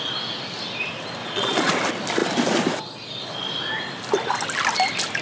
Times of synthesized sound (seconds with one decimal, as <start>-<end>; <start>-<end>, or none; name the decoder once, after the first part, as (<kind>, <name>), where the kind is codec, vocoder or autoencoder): 1.2-1.7 (vocoder, Vocos)